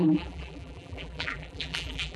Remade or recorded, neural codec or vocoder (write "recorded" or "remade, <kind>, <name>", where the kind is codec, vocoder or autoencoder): remade, vocoder, BigVGAN v2